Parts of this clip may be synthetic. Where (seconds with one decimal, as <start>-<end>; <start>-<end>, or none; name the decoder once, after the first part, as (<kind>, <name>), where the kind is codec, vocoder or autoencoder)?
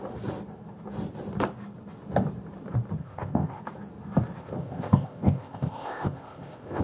3.0-3.6 (codec, ZipCodec); 4.4-6.8